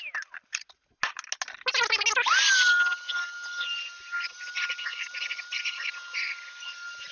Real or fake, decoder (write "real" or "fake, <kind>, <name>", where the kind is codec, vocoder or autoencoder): real